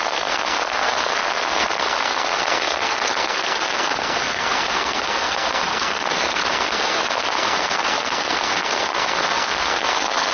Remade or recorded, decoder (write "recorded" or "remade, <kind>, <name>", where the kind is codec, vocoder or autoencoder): remade, codec, SNAC